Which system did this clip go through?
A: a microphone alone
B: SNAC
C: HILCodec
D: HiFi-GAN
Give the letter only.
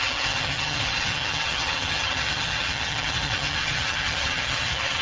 D